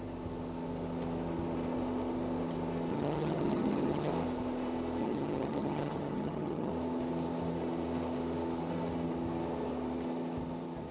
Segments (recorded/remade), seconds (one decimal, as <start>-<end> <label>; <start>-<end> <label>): 0.0-2.9 recorded; 2.9-4.1 remade; 4.1-5.0 recorded; 5.0-6.7 remade; 6.7-10.9 recorded